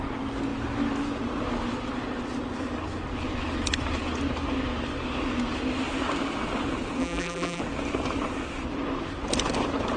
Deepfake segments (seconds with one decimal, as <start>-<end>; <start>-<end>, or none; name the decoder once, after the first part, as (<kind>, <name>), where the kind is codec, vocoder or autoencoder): 7.0-7.6 (vocoder, BigVGAN v2)

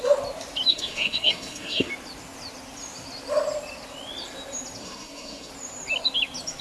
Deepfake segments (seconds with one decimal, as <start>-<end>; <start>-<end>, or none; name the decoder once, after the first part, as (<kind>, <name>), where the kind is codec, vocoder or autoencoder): 0.7-1.9 (codec, SNAC); 4.8-5.5

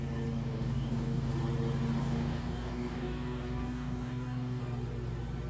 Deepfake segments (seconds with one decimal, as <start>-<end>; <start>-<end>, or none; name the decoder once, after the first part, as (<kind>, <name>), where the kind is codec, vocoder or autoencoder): 0.4-1.3 (codec, DAC); 2.0-4.6